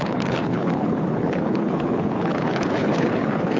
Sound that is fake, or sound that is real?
fake